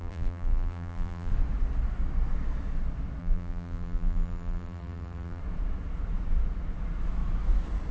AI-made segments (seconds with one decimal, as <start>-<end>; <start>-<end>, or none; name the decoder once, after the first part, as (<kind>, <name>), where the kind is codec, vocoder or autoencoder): 0.0-1.3 (vocoder, BigVGAN v2); 3.2-5.4